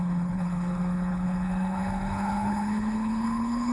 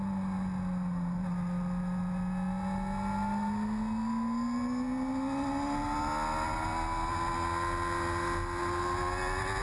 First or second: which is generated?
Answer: first